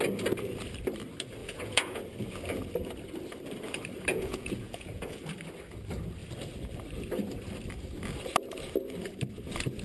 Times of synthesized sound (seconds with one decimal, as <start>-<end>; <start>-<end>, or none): 1.4-2.0; 4.1-5.2